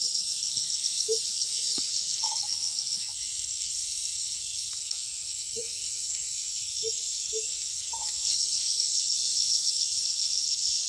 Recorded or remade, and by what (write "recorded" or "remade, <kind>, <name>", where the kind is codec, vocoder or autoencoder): remade, codec, SNAC